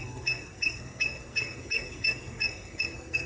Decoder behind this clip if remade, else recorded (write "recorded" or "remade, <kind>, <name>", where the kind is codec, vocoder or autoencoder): remade, codec, SNAC